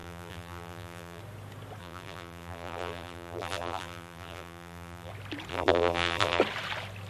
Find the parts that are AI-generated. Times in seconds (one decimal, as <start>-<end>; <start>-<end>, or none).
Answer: 0.0-1.2; 1.8-5.1; 5.5-6.4